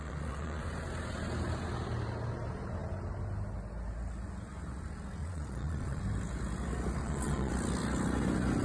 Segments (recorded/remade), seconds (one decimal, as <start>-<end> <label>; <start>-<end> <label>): 0.0-0.6 remade; 0.6-5.2 recorded; 5.2-6.0 remade; 6.0-7.0 recorded; 7.0-7.5 remade; 7.5-8.6 recorded